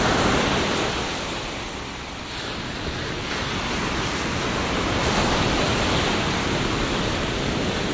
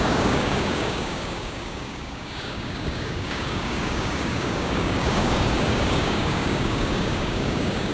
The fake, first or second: second